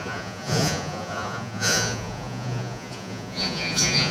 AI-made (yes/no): yes